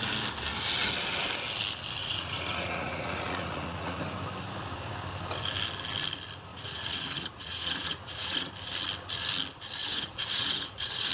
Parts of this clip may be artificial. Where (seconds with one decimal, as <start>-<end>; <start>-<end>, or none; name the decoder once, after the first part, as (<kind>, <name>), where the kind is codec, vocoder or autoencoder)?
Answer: 2.0-4.0 (vocoder, Vocos); 6.5-8.5; 9.8-11.1